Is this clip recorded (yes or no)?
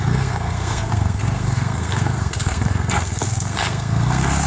no